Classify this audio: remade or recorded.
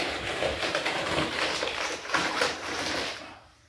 remade